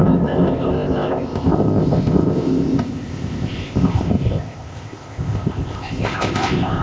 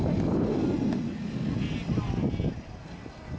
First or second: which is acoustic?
second